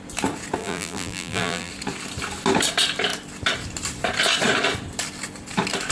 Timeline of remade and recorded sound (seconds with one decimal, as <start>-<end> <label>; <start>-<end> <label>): 0.0-0.6 recorded; 0.6-1.7 remade; 1.7-5.9 recorded